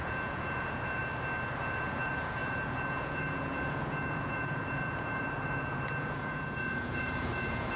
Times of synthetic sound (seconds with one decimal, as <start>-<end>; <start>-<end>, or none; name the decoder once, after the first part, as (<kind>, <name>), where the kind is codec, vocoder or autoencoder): 0.0-1.0 (vocoder, Vocos); 1.6-7.8